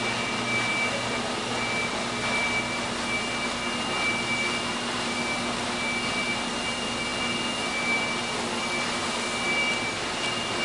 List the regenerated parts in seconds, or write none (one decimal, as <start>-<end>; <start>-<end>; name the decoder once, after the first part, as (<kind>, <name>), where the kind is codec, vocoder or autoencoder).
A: none